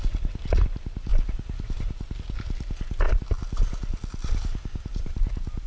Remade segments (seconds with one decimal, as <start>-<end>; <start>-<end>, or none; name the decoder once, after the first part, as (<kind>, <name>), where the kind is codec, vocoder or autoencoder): none